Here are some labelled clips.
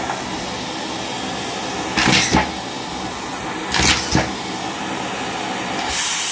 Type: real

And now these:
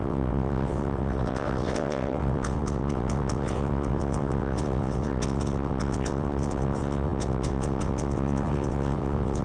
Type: fake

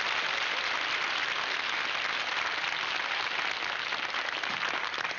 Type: real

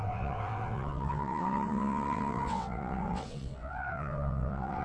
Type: fake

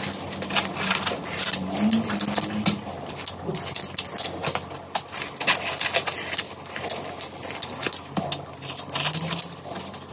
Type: real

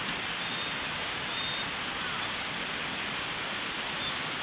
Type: real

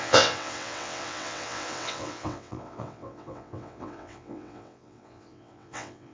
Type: fake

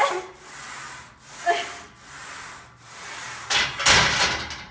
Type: real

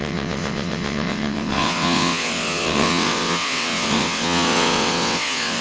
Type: fake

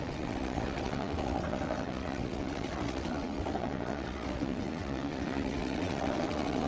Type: fake